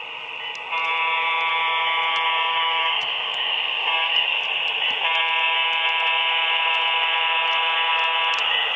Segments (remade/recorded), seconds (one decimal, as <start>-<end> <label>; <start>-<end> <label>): 0.0-2.5 recorded; 2.5-4.4 remade; 4.4-8.8 recorded